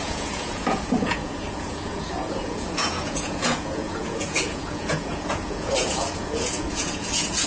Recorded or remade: remade